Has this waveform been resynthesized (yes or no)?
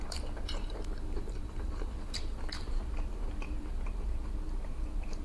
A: yes